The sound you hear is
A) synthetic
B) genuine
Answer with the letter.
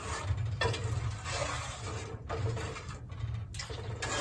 B